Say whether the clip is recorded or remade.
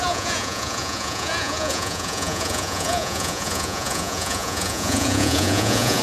remade